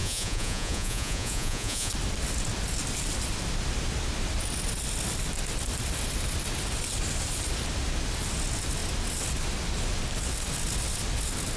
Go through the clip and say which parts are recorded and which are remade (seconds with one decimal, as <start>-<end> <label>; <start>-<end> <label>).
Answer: 0.0-1.9 remade; 1.9-11.6 recorded